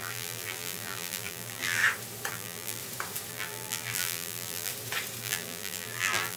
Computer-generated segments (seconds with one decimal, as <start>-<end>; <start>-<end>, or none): 0.0-1.8; 2.3-2.8; 3.3-4.7; 5.2-6.4

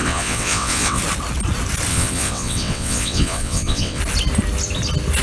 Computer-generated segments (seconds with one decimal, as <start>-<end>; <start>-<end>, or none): 0.0-1.0; 1.9-4.0

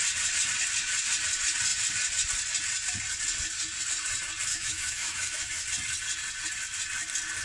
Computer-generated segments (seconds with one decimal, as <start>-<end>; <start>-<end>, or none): 4.5-5.6

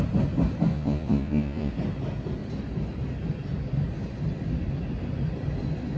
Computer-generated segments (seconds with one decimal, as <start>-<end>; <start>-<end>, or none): 0.7-1.7